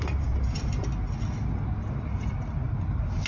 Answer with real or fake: real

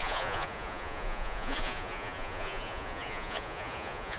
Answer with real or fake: fake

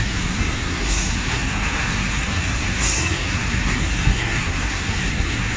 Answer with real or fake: fake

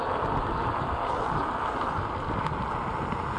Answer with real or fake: fake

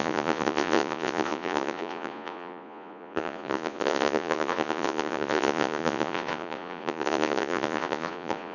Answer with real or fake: fake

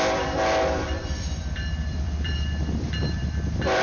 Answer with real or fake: fake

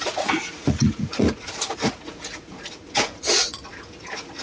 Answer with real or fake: fake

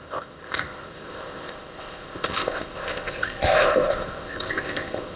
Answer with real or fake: fake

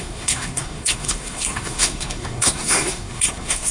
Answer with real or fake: fake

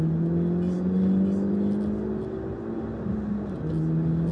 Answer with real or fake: real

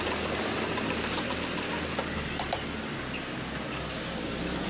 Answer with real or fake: real